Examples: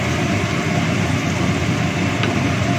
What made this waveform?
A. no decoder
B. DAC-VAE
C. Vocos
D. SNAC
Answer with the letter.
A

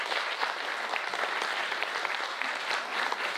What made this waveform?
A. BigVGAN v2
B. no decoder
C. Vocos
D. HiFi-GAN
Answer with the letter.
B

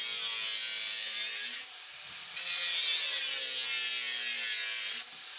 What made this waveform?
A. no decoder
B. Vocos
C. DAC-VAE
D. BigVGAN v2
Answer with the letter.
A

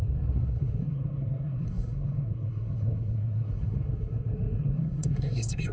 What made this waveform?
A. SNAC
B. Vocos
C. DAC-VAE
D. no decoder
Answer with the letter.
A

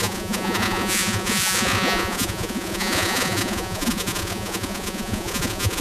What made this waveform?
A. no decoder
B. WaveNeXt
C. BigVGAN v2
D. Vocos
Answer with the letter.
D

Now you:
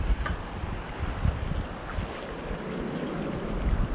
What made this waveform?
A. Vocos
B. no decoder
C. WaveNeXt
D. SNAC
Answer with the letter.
B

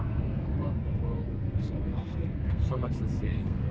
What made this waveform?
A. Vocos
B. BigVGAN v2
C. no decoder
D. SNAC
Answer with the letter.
D